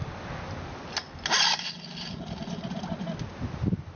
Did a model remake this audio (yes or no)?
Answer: no